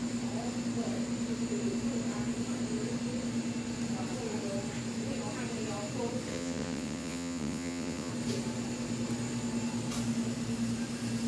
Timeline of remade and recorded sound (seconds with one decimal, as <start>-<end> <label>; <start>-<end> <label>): 0.0-6.3 recorded; 6.3-8.1 remade; 8.1-11.3 recorded